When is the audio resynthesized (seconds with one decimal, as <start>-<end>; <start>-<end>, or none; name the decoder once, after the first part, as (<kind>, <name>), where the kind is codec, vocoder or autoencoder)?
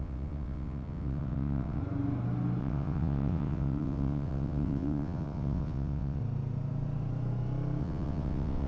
0.0-1.8 (vocoder, WaveNeXt); 2.6-6.2; 7.8-8.7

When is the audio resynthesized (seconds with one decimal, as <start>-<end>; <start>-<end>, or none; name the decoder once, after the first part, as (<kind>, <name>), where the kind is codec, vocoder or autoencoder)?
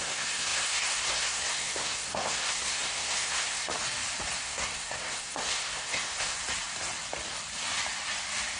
0.0-3.7 (codec, SNAC); 4.4-6.4